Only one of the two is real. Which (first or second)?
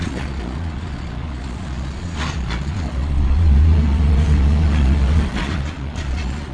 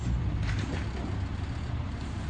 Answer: second